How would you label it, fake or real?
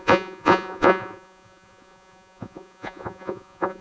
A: fake